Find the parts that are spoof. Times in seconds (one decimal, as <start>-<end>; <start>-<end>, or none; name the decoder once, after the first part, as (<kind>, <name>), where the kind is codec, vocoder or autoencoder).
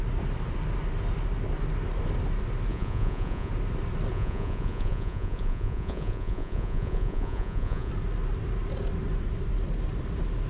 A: 2.7-3.5 (vocoder, Vocos); 4.1-7.9